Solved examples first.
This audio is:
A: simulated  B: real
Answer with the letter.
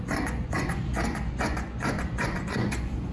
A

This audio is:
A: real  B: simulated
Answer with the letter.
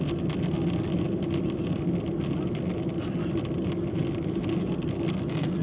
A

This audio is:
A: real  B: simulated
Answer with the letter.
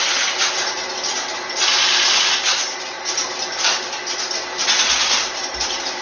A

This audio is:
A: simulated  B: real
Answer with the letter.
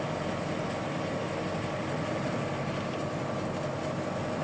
B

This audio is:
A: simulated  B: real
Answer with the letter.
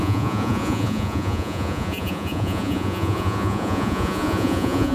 A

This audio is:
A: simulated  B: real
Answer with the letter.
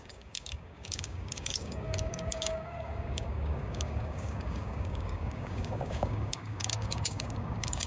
A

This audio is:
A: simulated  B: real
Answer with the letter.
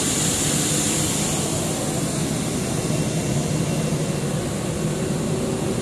B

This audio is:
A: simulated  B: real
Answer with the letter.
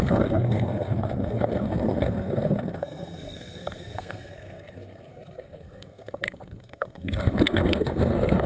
A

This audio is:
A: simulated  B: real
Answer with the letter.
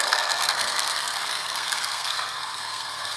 A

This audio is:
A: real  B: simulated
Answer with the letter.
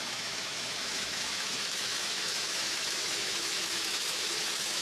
B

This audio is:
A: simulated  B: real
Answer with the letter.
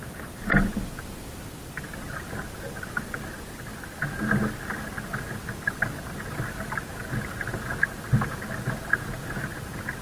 B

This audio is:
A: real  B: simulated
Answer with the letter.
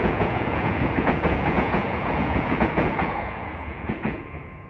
B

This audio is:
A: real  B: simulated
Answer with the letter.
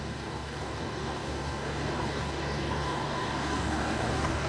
B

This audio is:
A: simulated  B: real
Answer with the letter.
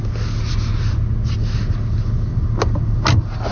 B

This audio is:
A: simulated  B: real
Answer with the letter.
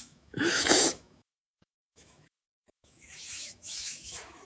A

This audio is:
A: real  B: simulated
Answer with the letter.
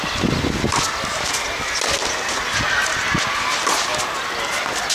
A